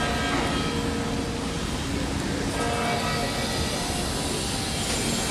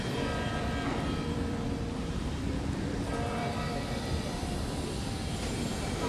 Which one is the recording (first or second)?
first